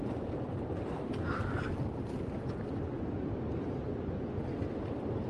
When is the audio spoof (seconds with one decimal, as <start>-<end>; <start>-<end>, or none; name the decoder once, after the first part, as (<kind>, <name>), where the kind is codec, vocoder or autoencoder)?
none